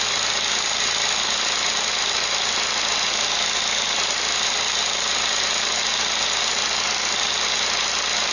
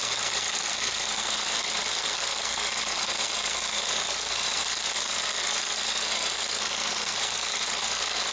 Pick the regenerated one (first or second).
second